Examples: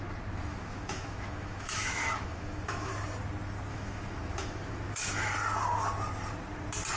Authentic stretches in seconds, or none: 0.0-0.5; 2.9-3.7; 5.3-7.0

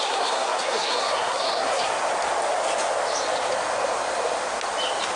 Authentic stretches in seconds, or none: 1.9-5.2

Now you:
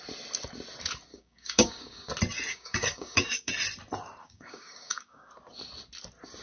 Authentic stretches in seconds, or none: 0.0-1.1; 2.1-2.5; 3.5-4.2; 5.3-6.4